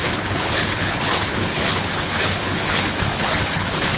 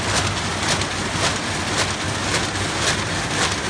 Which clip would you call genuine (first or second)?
second